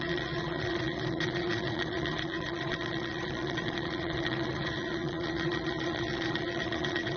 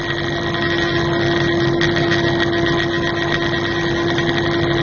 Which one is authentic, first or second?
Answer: second